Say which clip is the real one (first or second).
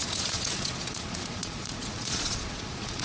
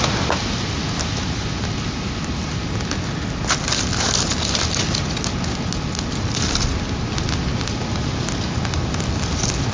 second